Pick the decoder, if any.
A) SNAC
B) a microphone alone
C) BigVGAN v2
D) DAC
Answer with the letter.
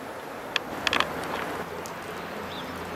B